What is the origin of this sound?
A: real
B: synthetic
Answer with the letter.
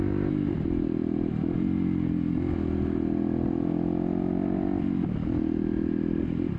A